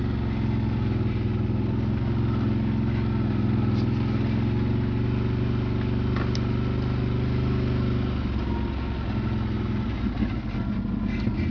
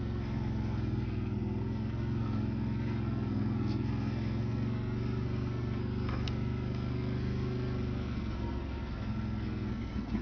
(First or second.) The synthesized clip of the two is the second